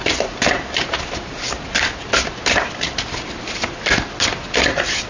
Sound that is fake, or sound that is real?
real